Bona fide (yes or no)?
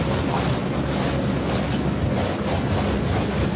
yes